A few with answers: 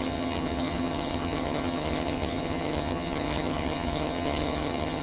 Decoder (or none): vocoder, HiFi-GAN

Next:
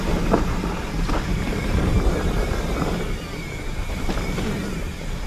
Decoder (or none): none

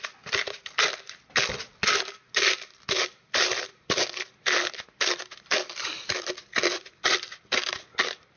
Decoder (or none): none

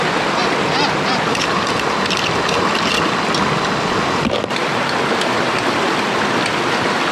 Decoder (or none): none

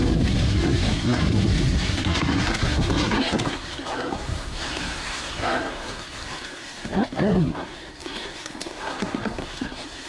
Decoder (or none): codec, SNAC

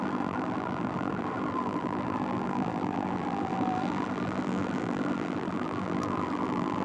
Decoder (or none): vocoder, BigVGAN v2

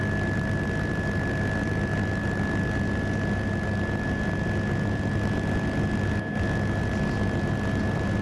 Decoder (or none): none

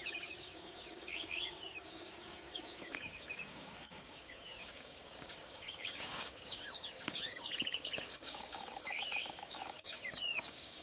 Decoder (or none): codec, DAC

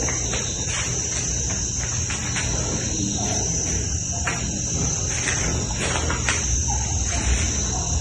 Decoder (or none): none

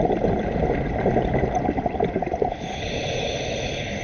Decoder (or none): none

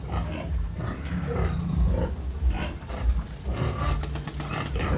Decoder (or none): none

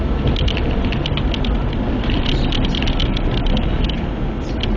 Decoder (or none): none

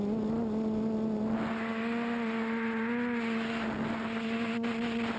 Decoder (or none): none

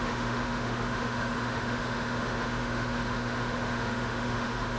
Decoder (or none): autoencoder, DAC-VAE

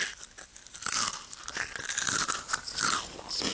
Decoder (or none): none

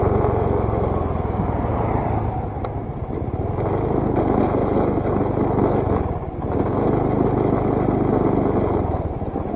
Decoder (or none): none